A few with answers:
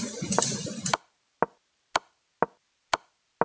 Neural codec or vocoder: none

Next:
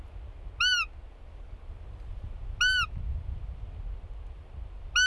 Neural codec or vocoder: none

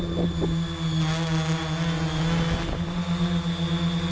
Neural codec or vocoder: none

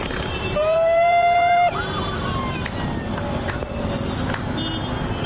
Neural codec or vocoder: none